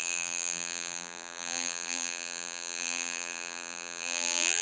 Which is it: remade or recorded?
remade